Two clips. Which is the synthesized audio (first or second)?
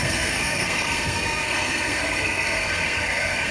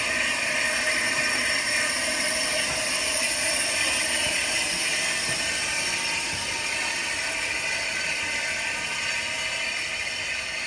first